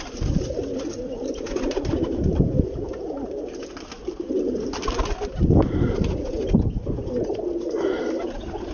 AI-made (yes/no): no